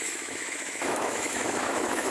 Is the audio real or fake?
fake